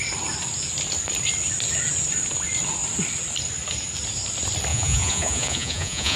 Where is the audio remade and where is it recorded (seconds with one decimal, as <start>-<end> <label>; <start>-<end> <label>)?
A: 0.0-4.7 recorded; 4.7-6.2 remade